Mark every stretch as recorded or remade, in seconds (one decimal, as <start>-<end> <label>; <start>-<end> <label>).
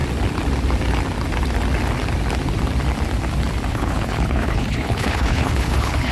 0.0-3.7 recorded; 3.7-6.1 remade